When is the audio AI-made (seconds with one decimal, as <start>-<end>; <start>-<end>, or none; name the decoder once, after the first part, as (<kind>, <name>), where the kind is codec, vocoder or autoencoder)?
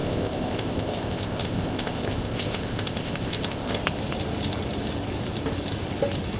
0.0-3.8 (codec, ZipCodec)